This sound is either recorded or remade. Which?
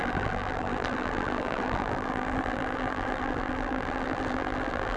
remade